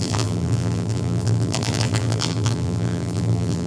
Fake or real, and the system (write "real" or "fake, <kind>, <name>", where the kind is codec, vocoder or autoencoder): fake, vocoder, BigVGAN v2